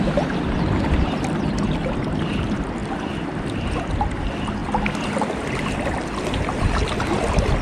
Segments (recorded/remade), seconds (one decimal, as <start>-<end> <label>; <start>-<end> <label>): 0.0-7.6 recorded